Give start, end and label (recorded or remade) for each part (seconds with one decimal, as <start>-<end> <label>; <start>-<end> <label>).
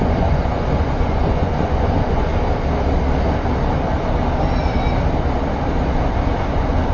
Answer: 0.0-2.3 remade; 2.3-6.4 recorded; 6.4-6.9 remade